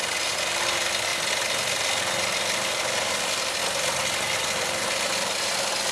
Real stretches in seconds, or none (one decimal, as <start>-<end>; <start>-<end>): 0.0-5.9